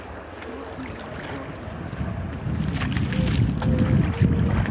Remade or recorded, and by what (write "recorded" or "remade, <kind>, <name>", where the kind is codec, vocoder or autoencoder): recorded